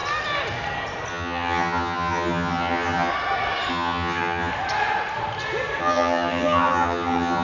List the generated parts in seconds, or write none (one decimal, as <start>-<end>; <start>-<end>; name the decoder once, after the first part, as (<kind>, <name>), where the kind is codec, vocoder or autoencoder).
1.1-3.1 (vocoder, HiFi-GAN); 3.7-4.5; 5.8-7.4